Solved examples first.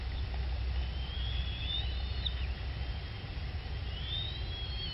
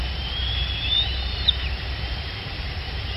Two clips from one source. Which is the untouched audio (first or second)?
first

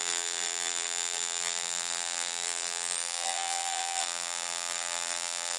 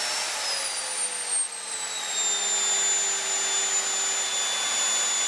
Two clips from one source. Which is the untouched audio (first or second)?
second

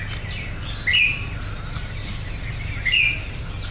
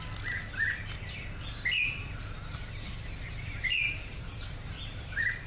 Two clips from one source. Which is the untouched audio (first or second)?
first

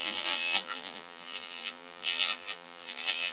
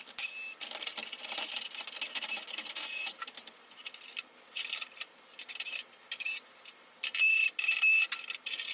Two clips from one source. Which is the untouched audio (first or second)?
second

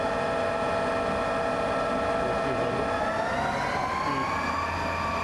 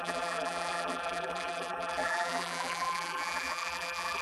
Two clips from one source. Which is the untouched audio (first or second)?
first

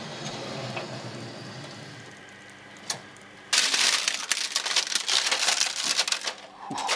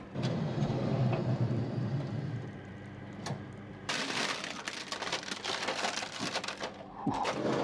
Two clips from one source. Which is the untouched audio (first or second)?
first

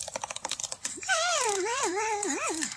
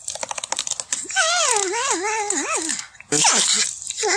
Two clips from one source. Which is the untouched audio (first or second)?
second